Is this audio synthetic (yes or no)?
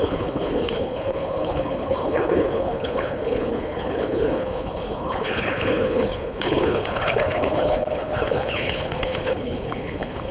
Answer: yes